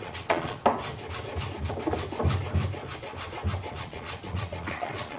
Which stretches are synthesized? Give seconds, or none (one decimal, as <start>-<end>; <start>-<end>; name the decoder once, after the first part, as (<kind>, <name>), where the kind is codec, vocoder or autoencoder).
0.0-0.6 (vocoder, Vocos); 3.7-5.2